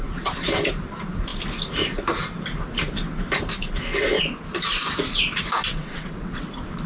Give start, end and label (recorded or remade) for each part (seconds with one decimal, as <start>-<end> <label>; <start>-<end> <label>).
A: 0.0-5.7 recorded; 5.7-6.4 remade; 6.4-6.9 recorded